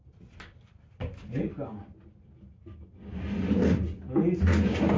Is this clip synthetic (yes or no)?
no